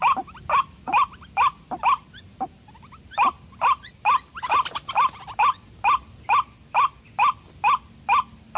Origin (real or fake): real